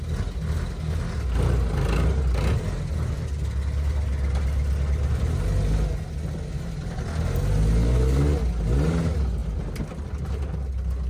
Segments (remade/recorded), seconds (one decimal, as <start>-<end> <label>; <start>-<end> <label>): 0.0-11.1 recorded